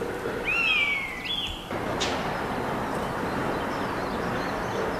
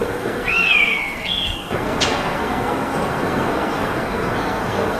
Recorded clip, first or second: first